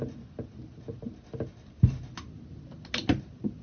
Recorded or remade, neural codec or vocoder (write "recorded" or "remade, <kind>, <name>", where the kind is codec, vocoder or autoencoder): recorded